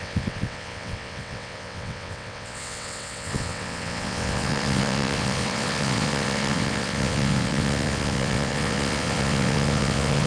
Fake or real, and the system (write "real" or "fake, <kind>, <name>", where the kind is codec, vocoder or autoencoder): fake, vocoder, WaveNeXt